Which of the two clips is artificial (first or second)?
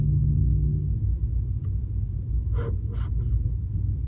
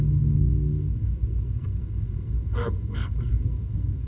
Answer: second